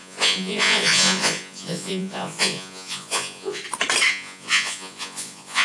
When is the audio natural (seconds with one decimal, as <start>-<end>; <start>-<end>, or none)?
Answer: 3.6-4.1